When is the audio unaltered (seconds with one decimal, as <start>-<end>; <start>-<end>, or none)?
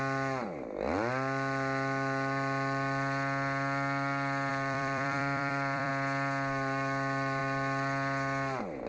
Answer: 0.0-4.5; 5.9-8.9